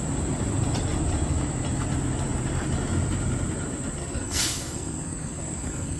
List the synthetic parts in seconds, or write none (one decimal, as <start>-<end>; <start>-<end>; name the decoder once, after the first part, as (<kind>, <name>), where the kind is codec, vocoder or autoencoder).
4.0-6.0 (codec, SNAC)

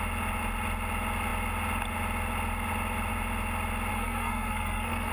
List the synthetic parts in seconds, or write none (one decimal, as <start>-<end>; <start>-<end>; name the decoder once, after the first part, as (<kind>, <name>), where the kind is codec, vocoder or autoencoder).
3.9-5.1 (codec, SNAC)

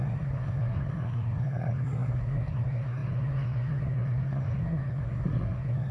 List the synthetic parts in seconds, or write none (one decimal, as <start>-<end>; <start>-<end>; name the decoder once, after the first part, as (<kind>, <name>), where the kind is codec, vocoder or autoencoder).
0.0-5.9 (codec, SNAC)